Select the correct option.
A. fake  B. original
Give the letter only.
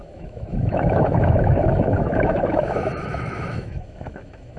A